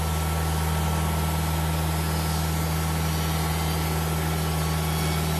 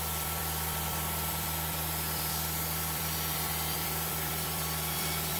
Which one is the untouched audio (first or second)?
first